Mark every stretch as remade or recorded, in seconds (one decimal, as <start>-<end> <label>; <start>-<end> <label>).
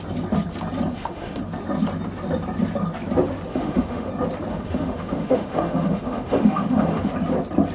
0.0-0.9 recorded; 0.9-1.4 remade; 1.4-3.5 recorded; 3.5-4.1 remade; 4.1-4.5 recorded; 4.5-7.1 remade; 7.1-7.7 recorded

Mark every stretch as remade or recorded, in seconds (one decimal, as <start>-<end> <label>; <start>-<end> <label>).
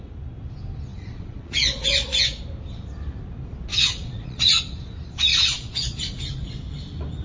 0.0-0.9 recorded; 0.9-2.4 remade; 2.4-3.7 recorded; 3.7-4.6 remade; 4.6-5.3 recorded; 5.3-6.0 remade; 6.0-7.2 recorded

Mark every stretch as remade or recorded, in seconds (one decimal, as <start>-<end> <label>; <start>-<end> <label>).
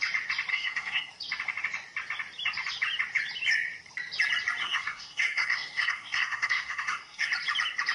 0.0-0.5 recorded; 0.5-1.1 remade; 1.1-4.6 recorded; 4.6-7.3 remade; 7.3-7.9 recorded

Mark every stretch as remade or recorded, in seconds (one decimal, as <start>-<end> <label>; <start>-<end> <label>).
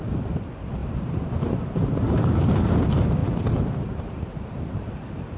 0.0-0.8 recorded; 0.8-2.0 remade; 2.0-3.2 recorded; 3.2-4.9 remade; 4.9-5.4 recorded